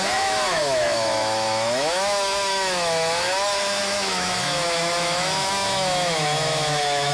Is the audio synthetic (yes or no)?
yes